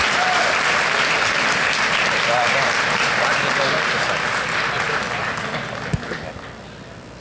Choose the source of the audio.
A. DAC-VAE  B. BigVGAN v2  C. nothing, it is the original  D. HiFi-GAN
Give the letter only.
C